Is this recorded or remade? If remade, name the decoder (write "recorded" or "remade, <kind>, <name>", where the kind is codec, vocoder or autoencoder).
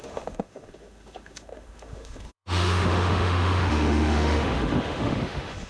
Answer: remade, autoencoder, DAC-VAE